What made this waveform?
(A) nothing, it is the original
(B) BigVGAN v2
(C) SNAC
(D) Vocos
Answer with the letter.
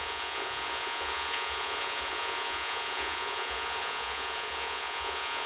D